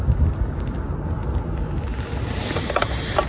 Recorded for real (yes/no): yes